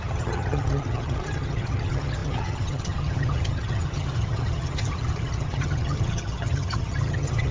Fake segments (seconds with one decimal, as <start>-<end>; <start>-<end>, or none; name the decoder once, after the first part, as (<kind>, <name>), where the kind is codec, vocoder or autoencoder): 0.0-7.5 (vocoder, HiFi-GAN)